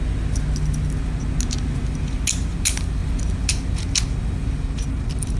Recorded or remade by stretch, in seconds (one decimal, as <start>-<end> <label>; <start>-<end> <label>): 0.0-5.4 recorded